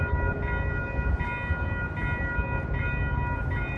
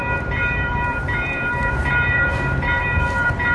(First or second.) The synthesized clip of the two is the second